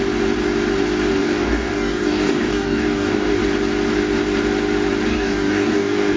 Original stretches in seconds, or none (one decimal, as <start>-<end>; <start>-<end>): 0.0-1.2; 3.4-5.1

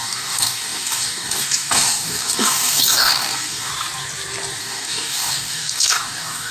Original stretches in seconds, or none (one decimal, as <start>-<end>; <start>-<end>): 3.7-4.6

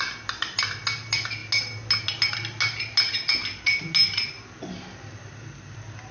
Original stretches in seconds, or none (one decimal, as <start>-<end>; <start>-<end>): 0.0-6.1

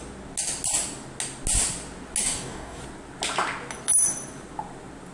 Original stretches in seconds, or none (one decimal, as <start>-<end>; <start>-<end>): 0.0-2.2; 2.8-5.1